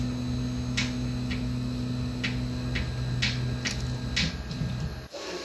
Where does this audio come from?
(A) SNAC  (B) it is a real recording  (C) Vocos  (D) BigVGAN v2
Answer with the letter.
B